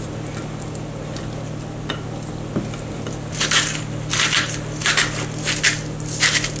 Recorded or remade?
recorded